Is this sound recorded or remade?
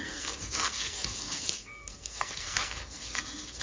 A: remade